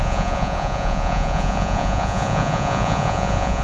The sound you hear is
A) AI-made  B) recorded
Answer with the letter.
A